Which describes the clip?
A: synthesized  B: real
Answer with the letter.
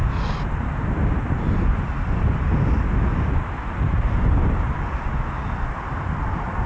B